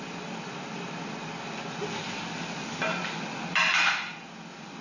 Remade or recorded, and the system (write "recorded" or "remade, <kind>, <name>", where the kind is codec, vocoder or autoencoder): recorded